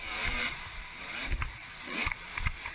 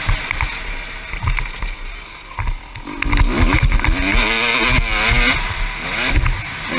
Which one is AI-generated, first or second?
first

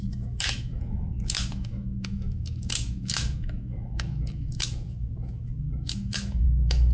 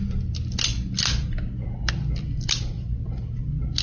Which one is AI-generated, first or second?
first